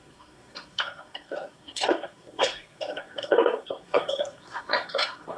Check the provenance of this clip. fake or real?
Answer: fake